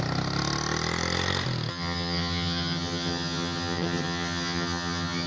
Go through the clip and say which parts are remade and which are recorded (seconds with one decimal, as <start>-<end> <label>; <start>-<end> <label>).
0.0-1.7 recorded; 1.7-5.3 remade